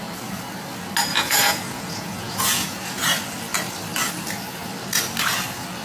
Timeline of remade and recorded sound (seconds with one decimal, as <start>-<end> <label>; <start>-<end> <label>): 0.0-1.1 recorded; 1.1-3.0 remade; 3.0-5.8 recorded